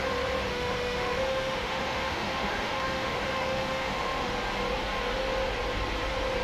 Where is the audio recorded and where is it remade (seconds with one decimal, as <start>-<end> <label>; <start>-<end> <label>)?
0.0-0.5 recorded; 0.5-4.3 remade; 4.3-6.4 recorded